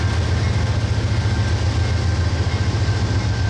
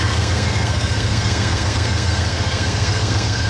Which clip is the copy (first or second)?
second